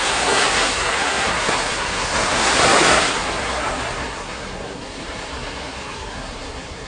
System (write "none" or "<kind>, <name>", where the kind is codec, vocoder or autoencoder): codec, SNAC